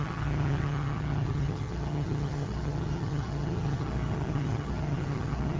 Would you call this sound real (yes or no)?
no